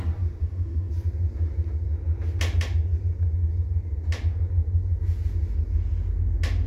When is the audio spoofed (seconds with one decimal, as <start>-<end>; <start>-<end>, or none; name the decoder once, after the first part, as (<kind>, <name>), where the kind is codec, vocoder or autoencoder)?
0.4-0.9 (autoencoder, DAC-VAE)